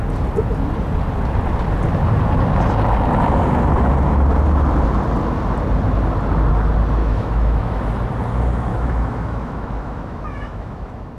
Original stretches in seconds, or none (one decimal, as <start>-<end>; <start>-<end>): 0.0-7.0; 7.8-8.7

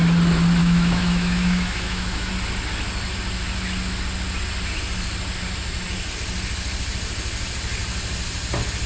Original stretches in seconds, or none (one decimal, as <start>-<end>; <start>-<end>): 0.0-0.6; 2.3-8.9

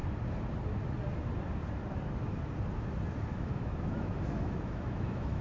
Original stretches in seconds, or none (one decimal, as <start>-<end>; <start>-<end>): 0.0-3.2

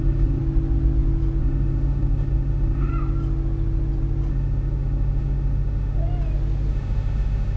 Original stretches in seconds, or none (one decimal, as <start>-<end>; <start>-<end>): 0.4-1.4; 2.9-4.3; 6.0-6.7

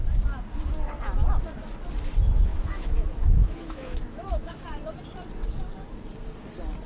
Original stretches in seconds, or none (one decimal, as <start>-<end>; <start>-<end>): 0.0-2.5; 4.6-6.9

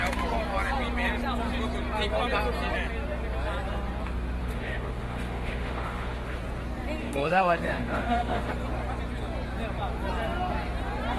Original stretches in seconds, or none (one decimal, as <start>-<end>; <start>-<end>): 0.0-4.4; 6.4-7.0; 8.5-11.2

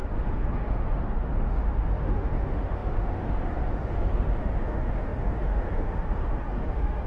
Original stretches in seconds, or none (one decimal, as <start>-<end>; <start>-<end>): none

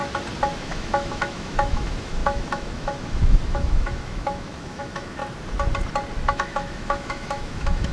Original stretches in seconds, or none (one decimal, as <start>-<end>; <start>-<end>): 0.0-0.6; 5.2-6.3